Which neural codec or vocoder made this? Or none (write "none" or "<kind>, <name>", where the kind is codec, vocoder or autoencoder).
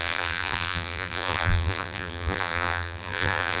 vocoder, BigVGAN v2